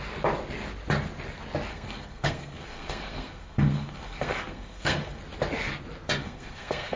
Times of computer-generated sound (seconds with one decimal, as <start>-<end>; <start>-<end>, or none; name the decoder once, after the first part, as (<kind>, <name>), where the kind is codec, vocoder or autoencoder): 1.7-5.2 (codec, SNAC); 6.2-7.0